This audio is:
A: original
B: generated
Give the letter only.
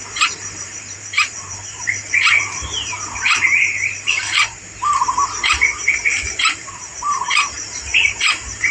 B